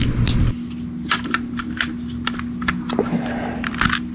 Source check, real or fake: real